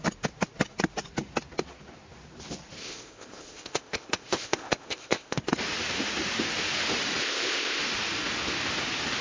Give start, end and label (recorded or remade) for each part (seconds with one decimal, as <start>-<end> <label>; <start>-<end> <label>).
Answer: 0.0-2.8 recorded; 2.8-5.4 remade; 5.4-7.2 recorded; 7.2-7.8 remade; 7.8-9.2 recorded